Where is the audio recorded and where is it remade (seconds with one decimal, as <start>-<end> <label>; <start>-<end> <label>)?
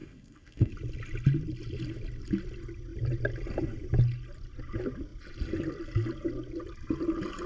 0.0-0.7 remade; 0.7-7.5 recorded